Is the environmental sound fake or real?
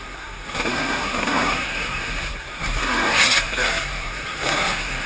fake